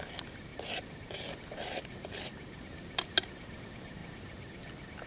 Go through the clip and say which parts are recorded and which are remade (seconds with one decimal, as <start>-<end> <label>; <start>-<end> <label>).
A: 0.0-5.1 recorded